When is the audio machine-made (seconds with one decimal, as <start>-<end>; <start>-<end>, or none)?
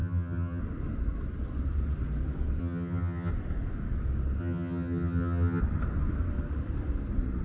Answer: 0.0-0.6; 2.6-3.3; 4.4-5.6